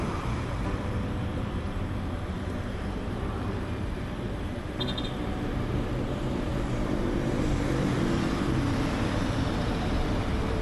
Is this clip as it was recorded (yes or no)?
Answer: no